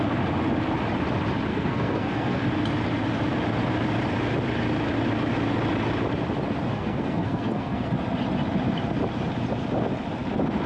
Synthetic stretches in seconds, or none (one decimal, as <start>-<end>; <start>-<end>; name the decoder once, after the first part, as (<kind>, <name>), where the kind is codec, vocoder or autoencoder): 1.5-2.4 (codec, SNAC); 6.7-7.9